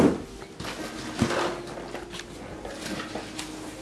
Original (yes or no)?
yes